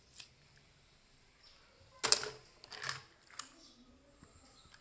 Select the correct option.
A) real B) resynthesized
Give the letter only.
A